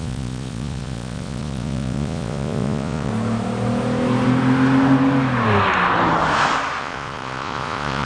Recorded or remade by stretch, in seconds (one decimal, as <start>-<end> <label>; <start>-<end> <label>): 0.0-3.1 remade; 3.1-6.8 recorded; 6.8-8.1 remade